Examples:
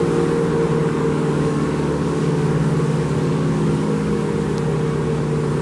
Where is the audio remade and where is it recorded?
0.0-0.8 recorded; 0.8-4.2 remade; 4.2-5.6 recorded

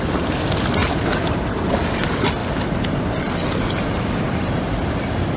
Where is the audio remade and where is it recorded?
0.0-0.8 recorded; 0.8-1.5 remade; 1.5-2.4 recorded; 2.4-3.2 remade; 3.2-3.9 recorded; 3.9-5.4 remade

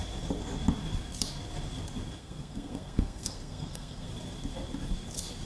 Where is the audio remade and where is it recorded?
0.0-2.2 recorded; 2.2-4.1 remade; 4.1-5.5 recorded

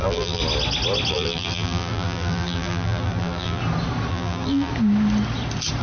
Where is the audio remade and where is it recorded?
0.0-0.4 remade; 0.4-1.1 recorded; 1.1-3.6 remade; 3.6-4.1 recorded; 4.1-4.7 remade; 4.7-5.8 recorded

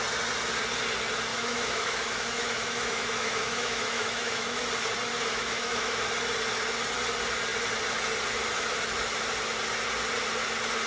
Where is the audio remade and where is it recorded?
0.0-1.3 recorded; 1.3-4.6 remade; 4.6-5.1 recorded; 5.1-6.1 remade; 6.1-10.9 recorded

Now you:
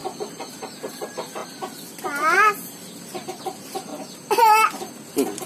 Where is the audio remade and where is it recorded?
0.0-0.5 recorded; 0.5-1.4 remade; 1.4-3.4 recorded; 3.4-3.9 remade; 3.9-5.1 recorded; 5.1-5.5 remade

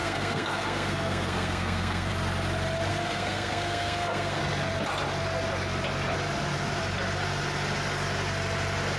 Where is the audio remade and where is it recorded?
0.0-2.1 remade; 2.1-2.9 recorded; 2.9-4.4 remade; 4.4-9.0 recorded